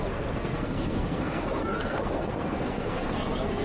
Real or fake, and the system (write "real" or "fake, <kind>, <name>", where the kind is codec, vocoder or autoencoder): fake, codec, SNAC